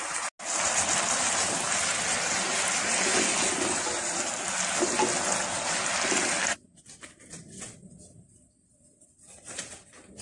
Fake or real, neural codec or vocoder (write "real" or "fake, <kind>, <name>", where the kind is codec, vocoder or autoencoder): real